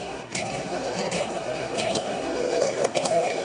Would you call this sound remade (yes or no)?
yes